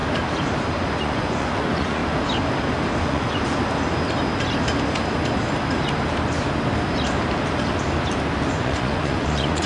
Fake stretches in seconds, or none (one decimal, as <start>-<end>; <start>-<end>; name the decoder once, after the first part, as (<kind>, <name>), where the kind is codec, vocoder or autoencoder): 1.0-2.0 (vocoder, Vocos); 3.0-3.4; 8.5-9.7